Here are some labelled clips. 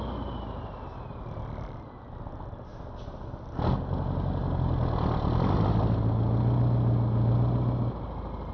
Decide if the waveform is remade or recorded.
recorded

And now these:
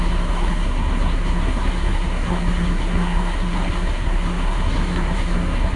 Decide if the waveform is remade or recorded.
remade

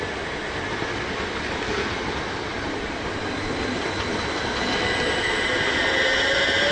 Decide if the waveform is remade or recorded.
recorded